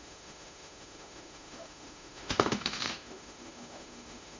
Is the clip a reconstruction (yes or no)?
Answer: yes